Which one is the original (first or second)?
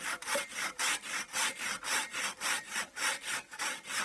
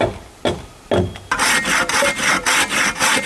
second